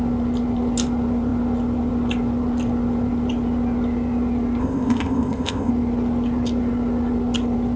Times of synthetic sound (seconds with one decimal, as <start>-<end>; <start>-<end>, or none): 4.6-5.7